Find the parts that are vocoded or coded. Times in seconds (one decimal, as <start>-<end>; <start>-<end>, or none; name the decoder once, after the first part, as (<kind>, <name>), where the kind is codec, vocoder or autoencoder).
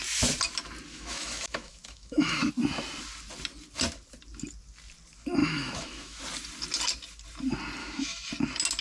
0.9-2.5 (autoencoder, DAC-VAE); 5.4-6.2; 7.8-8.3